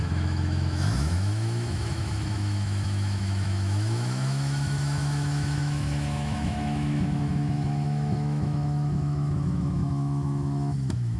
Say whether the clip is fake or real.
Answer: fake